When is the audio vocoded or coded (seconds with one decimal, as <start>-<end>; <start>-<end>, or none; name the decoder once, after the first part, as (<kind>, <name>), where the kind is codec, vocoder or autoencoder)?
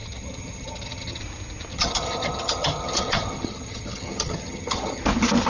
0.0-1.2 (vocoder, HiFi-GAN); 1.7-5.0